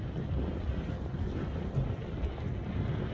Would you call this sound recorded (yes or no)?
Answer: yes